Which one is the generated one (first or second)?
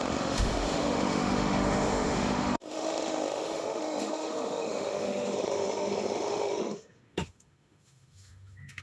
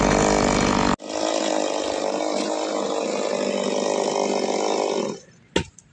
first